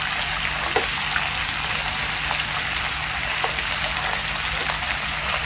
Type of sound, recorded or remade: recorded